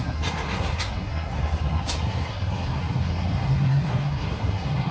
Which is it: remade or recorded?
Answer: remade